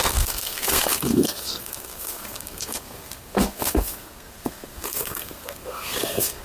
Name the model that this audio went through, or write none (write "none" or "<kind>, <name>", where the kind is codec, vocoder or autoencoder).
codec, SNAC